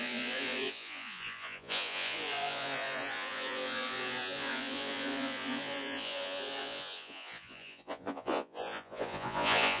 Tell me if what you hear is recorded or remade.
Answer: remade